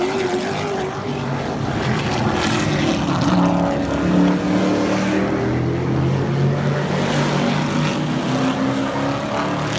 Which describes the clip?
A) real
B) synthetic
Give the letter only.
A